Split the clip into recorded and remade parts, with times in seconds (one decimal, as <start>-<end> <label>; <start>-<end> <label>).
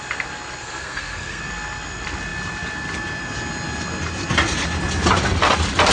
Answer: 0.0-0.6 recorded; 0.6-1.4 remade; 1.4-5.9 recorded